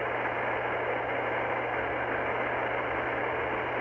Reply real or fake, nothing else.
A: real